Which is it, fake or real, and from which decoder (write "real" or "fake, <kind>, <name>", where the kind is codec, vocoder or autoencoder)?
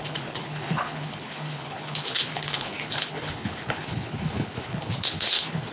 fake, codec, HILCodec